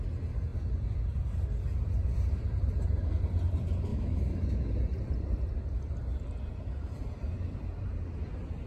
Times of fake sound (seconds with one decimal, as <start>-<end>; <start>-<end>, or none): 3.9-4.7